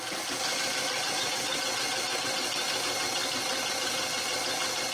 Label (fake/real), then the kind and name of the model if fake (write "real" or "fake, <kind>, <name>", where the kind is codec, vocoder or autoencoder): real